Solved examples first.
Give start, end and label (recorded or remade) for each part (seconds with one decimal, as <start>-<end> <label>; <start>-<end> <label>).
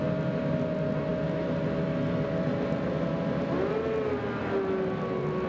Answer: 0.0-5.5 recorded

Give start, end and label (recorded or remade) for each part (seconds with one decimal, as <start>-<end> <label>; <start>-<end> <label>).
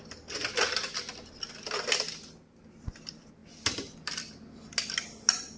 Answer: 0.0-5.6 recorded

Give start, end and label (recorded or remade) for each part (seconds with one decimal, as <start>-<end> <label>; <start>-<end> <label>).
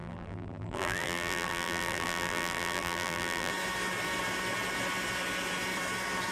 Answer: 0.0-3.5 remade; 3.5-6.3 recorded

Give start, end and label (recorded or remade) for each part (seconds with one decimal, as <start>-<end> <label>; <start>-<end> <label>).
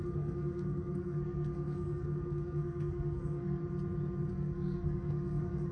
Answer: 0.0-3.6 remade; 3.6-4.3 recorded; 4.3-5.7 remade